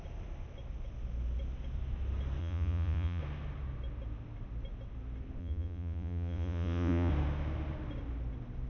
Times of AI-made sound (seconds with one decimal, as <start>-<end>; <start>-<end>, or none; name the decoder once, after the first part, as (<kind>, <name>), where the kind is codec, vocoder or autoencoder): 2.4-3.2 (vocoder, Vocos); 5.4-7.1